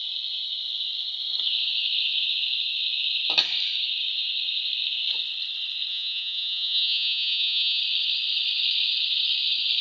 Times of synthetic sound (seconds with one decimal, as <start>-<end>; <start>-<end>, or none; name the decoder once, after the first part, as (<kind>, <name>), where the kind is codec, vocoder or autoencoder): 5.9-7.8 (vocoder, Vocos)